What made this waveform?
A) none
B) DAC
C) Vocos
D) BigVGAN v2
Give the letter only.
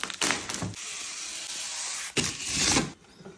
A